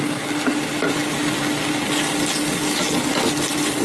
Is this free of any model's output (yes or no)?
yes